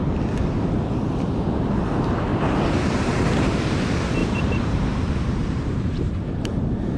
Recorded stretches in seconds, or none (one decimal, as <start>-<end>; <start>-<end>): 0.0-2.3; 3.8-4.2; 5.0-5.4; 6.5-7.0